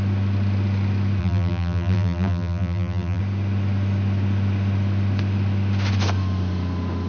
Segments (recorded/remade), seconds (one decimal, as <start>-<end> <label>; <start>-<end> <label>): 0.0-1.2 recorded; 1.2-3.2 remade; 3.2-7.1 recorded